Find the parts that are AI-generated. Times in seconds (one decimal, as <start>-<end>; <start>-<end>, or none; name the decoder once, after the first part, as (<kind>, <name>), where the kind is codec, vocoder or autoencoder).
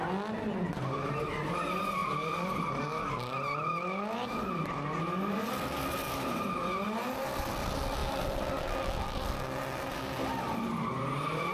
2.0-2.8 (vocoder, BigVGAN v2)